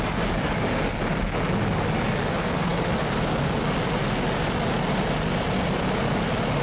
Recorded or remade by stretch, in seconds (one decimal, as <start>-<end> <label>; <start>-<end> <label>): 0.0-6.6 recorded